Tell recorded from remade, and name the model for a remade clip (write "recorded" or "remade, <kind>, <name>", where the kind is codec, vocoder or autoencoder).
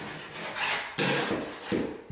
recorded